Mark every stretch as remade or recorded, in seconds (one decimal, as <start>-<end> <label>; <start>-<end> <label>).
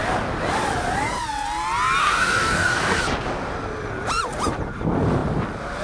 0.0-2.0 recorded; 2.0-3.0 remade; 3.0-5.8 recorded